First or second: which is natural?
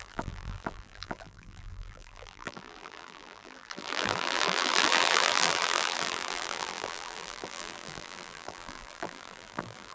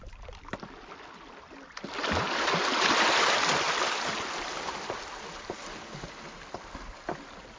second